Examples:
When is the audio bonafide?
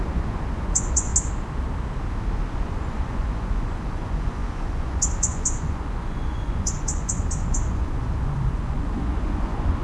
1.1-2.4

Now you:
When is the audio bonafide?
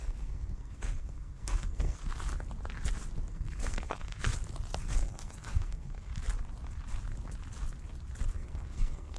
2.0-3.3; 4.3-4.8; 6.1-8.3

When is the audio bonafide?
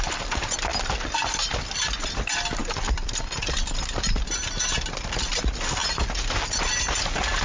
0.0-2.6; 4.5-7.4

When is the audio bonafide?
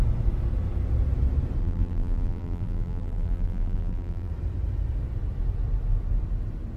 0.0-1.6; 4.3-6.8